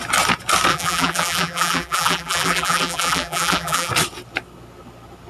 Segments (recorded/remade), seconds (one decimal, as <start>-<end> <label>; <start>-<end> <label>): 0.0-0.7 recorded; 0.7-3.9 remade; 3.9-5.3 recorded